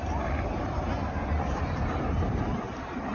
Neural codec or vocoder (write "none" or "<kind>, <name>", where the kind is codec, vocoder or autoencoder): vocoder, BigVGAN v2